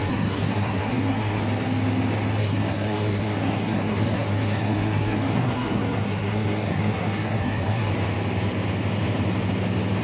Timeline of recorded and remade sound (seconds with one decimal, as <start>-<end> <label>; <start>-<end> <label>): 0.0-1.4 remade; 1.4-2.4 recorded; 2.4-7.9 remade; 7.9-10.0 recorded